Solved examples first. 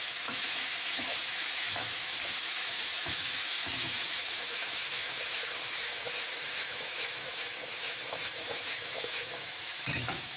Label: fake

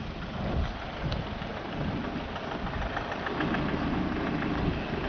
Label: real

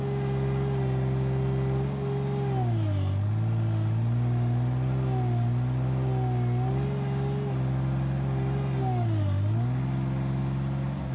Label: real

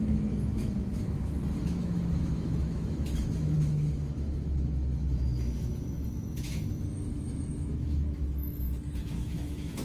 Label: fake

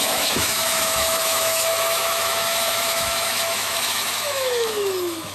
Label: fake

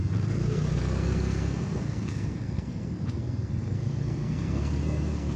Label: fake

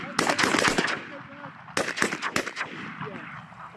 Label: real